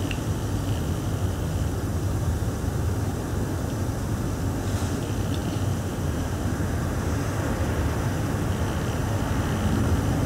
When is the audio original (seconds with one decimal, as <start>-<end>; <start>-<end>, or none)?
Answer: 0.0-1.9; 3.1-5.4; 6.7-10.3